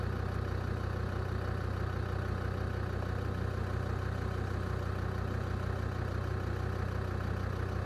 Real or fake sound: real